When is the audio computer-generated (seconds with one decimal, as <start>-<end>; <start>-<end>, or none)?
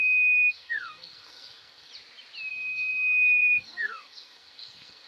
0.0-1.9; 2.5-5.1